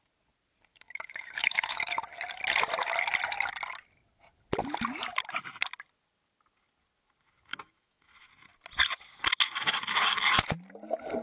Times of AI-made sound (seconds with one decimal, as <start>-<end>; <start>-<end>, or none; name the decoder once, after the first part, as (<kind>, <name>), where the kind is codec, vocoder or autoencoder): 0.7-2.0 (autoencoder, DAC-VAE); 7.5-8.3